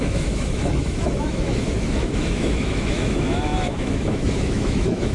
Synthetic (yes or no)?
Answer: yes